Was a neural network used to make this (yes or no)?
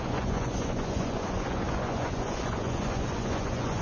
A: yes